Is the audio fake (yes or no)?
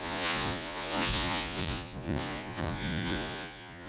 yes